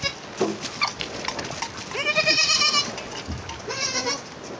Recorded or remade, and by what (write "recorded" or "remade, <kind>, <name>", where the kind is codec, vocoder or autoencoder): recorded